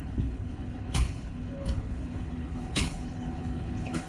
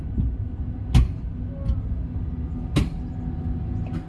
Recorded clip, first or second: second